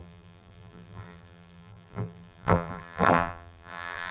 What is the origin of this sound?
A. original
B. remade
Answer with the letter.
B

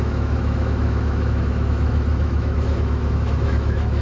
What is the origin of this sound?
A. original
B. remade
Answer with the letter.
B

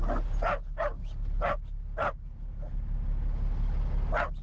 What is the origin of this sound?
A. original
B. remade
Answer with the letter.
A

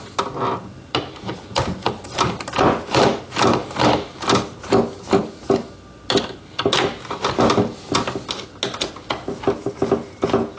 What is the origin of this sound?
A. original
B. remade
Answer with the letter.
A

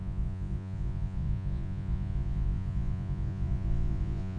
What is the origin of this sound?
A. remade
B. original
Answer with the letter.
A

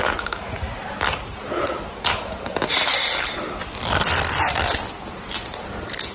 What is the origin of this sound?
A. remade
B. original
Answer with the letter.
B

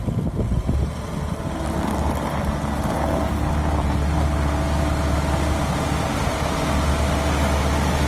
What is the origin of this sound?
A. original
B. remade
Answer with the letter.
A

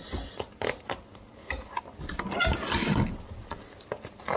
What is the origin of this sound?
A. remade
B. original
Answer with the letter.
B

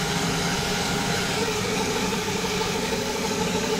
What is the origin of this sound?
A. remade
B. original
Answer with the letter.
A